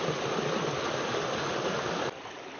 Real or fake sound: real